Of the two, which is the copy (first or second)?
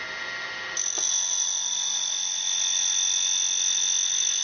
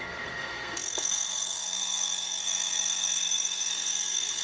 second